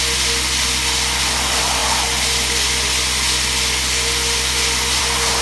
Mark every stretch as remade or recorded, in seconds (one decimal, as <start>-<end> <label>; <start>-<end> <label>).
0.0-5.4 recorded